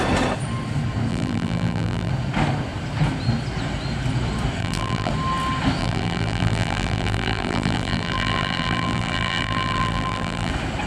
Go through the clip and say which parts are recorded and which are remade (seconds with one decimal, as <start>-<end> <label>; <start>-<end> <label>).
0.0-1.1 recorded; 1.1-2.1 remade; 2.1-4.6 recorded; 4.6-5.1 remade; 5.1-5.8 recorded; 5.8-10.5 remade; 10.5-10.9 recorded